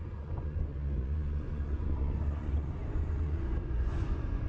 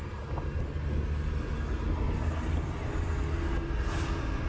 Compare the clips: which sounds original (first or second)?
second